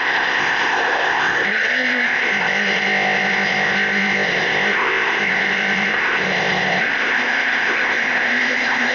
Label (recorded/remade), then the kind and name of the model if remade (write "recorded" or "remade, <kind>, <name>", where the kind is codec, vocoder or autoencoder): remade, codec, ZipCodec